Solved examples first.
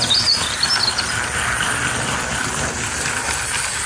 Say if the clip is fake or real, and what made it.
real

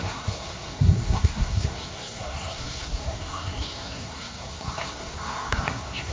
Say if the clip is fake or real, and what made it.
fake, codec, SNAC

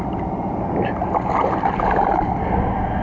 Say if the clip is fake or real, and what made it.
real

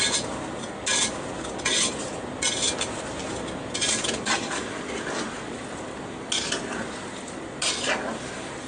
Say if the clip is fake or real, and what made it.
real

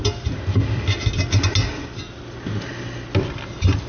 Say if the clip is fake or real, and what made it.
real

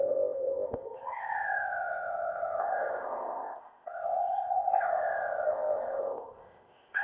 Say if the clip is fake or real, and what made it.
fake, codec, ZipCodec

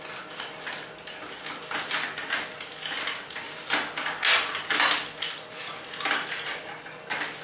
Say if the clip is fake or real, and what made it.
real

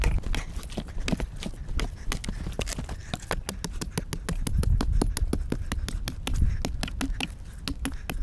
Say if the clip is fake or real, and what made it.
real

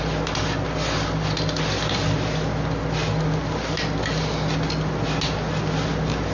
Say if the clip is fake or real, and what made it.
real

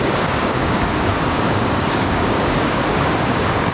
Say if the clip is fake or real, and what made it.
fake, codec, DAC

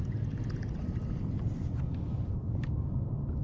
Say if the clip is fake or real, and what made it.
real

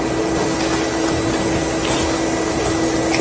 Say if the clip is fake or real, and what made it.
real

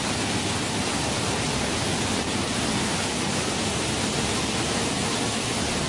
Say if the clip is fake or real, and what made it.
real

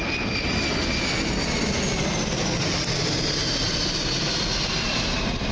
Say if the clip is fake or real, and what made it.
real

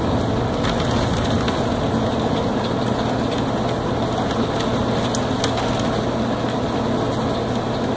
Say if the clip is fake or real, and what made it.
real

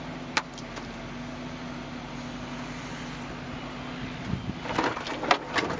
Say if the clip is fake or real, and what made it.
real